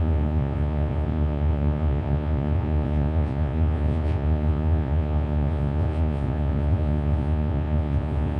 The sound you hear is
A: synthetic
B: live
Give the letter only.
A